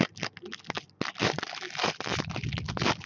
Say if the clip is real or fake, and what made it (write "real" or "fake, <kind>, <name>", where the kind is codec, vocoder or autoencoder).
real